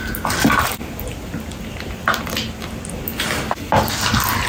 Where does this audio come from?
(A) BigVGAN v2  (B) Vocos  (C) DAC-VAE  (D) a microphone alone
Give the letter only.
D